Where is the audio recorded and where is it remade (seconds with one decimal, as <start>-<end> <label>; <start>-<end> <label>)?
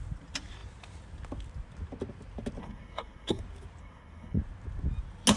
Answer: 0.0-2.6 recorded; 2.6-3.4 remade; 3.4-3.8 recorded; 3.8-4.4 remade; 4.4-5.4 recorded